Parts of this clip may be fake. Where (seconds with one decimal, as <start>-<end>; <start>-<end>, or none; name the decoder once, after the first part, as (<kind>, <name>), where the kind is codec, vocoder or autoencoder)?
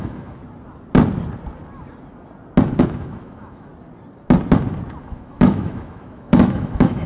0.0-0.4 (autoencoder, DAC-VAE); 2.8-3.7; 5.0-7.1